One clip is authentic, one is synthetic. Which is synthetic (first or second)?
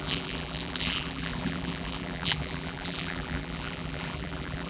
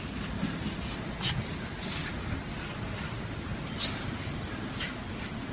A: first